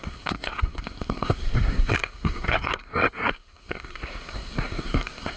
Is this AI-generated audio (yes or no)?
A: yes